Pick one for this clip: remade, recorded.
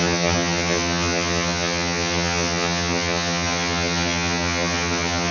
remade